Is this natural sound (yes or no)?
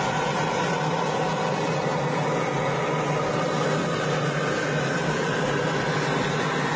yes